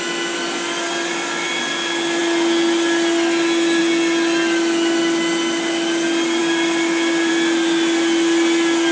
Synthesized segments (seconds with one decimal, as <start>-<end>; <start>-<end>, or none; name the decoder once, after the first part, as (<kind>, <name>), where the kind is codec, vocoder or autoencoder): none